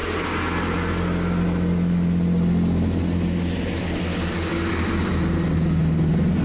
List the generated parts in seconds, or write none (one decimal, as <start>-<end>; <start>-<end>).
none

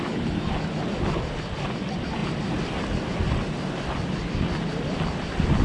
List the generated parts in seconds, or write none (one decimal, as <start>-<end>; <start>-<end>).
2.2-2.8

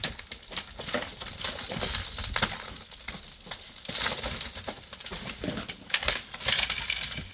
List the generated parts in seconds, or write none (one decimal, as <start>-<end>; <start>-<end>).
5.4-6.2

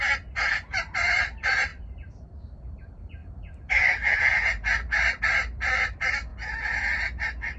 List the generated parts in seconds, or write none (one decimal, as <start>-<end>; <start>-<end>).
0.0-6.3

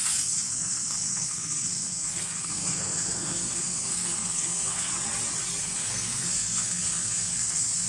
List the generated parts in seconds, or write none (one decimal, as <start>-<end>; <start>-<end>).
0.0-4.9; 5.6-7.9

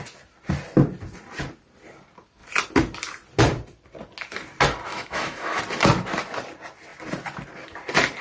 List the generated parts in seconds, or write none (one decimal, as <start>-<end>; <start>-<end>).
4.9-5.6

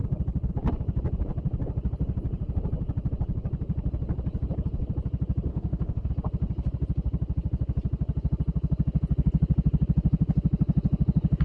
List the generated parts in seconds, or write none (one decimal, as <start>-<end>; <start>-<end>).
5.5-6.1

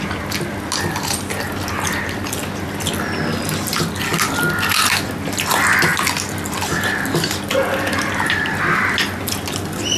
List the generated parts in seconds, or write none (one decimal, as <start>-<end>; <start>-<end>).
none